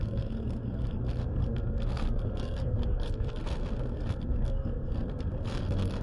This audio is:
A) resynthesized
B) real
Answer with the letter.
A